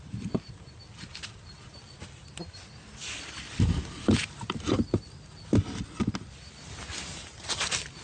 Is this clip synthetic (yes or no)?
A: no